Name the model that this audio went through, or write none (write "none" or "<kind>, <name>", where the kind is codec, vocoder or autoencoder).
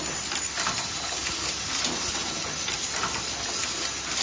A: none